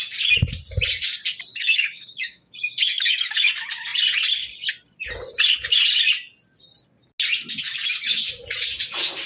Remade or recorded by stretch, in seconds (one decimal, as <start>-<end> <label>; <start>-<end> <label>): 0.0-1.5 recorded; 1.5-3.5 remade; 3.5-9.3 recorded